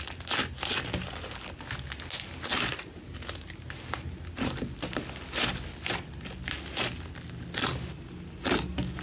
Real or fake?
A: real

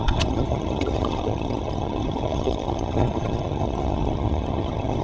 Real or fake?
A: fake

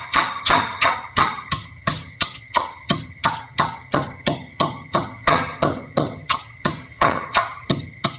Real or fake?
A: fake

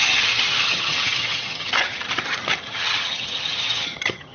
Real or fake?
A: fake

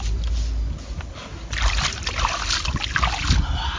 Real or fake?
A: real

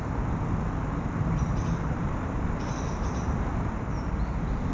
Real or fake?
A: real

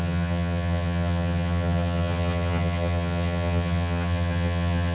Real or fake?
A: fake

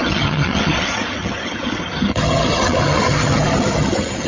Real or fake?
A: fake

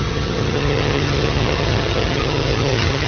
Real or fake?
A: fake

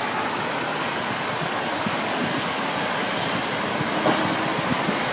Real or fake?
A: real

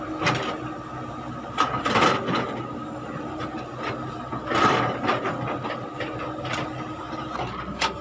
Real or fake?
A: real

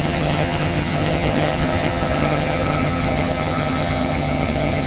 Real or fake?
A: fake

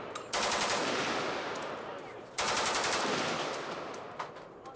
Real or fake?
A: real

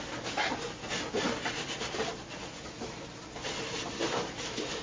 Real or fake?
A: real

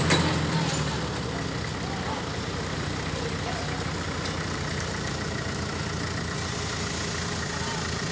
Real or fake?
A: real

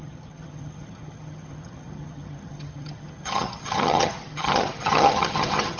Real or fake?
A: fake